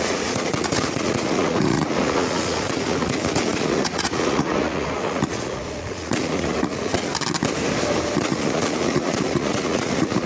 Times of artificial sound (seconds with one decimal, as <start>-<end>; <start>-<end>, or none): 0.0-7.1; 8.2-10.3